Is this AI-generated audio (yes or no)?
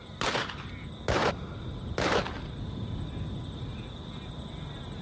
no